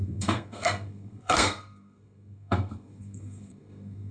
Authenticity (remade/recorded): remade